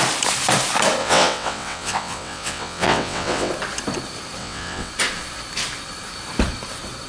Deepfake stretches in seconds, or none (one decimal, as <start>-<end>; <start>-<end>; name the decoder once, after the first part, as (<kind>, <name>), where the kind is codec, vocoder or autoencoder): 1.0-3.5 (vocoder, WaveNeXt); 4.4-4.9